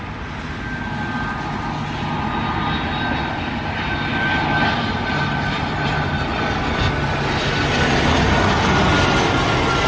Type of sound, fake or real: real